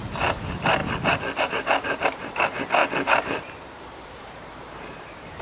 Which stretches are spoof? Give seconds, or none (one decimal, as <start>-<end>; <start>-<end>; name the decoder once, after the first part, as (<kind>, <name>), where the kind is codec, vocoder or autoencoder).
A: 0.0-0.8 (vocoder, BigVGAN v2); 1.4-5.4

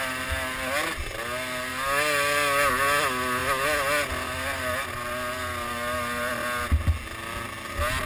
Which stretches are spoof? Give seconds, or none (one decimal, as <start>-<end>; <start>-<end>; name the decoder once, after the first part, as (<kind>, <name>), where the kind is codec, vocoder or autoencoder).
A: none

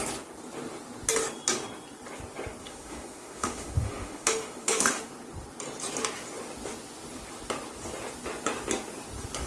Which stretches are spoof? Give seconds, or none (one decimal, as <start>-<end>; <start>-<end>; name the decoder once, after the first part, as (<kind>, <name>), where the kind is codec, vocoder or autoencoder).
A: 2.6-5.1 (autoencoder, DAC-VAE)

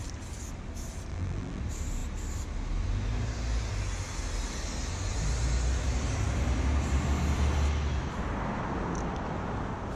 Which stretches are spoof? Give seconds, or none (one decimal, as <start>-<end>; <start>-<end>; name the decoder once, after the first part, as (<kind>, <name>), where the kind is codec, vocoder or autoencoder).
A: 1.1-1.6 (vocoder, BigVGAN v2)

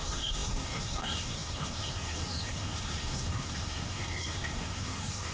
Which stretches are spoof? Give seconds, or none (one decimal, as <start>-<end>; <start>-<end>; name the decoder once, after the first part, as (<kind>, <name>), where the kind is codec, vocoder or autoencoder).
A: 0.0-5.3 (codec, SNAC)

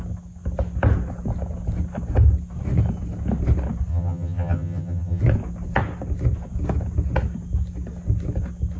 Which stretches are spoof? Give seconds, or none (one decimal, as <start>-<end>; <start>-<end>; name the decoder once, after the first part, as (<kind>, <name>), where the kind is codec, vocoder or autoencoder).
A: 3.9-5.2 (vocoder, HiFi-GAN)

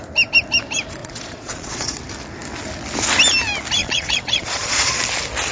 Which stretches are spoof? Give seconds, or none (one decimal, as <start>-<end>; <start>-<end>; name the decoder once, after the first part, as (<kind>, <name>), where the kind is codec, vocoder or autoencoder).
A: 1.0-2.0 (vocoder, Vocos); 3.8-5.0